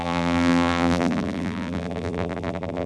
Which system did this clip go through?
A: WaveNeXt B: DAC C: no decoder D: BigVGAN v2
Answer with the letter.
D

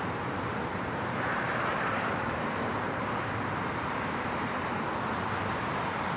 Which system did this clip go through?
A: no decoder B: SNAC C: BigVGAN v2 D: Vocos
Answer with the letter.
C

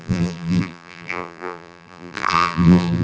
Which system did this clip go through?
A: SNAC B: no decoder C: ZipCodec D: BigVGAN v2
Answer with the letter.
D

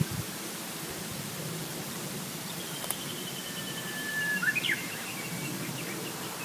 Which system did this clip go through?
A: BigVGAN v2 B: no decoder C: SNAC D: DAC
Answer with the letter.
A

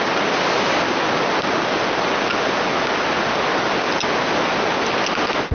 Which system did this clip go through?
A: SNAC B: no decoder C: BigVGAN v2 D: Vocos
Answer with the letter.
B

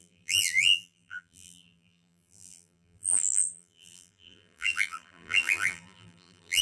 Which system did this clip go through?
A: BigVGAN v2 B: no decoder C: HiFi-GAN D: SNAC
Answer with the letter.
A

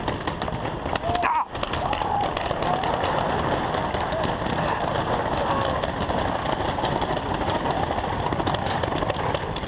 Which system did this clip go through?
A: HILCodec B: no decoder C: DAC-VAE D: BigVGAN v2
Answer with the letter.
B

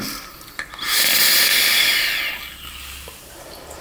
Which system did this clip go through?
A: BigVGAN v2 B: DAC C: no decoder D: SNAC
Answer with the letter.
C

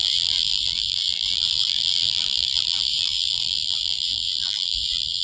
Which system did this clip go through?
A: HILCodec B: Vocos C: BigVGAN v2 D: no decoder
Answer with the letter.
C